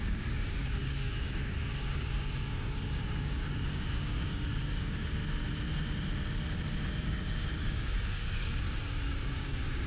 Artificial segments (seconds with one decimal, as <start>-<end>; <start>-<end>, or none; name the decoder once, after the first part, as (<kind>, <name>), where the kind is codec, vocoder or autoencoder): 0.0-5.2 (codec, DAC); 7.0-9.9